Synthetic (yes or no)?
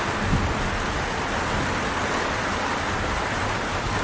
no